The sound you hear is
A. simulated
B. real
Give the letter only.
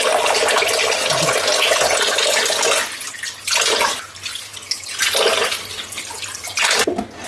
B